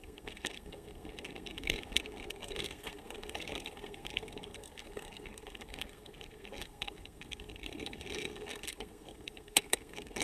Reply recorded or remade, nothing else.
remade